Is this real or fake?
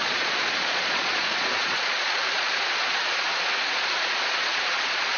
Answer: fake